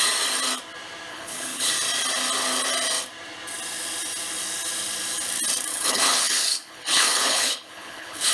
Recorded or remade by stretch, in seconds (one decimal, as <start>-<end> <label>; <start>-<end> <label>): 0.0-1.1 recorded; 1.1-1.7 remade; 1.7-5.7 recorded; 5.7-8.3 remade

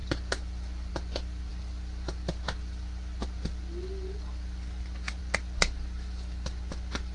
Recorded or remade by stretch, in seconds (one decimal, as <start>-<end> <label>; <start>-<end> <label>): 0.0-7.1 recorded

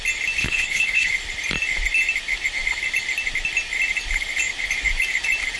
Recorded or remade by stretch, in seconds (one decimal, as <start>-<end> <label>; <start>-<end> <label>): 0.0-0.4 recorded; 0.4-1.1 remade; 1.1-5.6 recorded

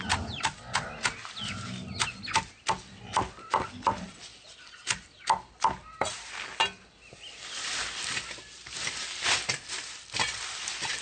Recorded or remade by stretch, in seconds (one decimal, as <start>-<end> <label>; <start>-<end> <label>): 0.0-11.0 recorded

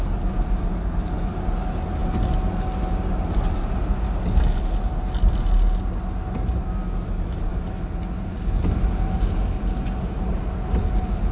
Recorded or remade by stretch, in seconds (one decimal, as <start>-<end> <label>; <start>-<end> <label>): 0.0-11.3 recorded

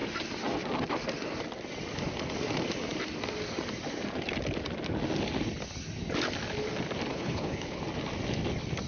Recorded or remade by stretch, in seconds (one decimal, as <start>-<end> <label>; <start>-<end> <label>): 0.0-7.1 recorded; 7.1-7.8 remade; 7.8-8.9 recorded

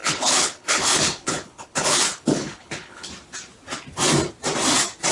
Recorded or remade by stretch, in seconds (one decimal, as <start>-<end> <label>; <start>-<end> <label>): 0.0-3.1 remade; 3.1-5.1 recorded

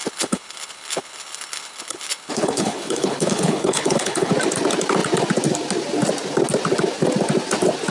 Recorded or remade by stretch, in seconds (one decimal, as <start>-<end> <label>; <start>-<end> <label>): 0.0-4.3 remade; 4.3-7.9 recorded